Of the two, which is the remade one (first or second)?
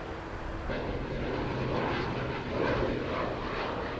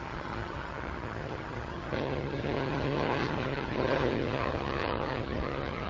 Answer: second